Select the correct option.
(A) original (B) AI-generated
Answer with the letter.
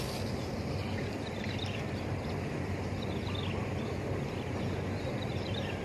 A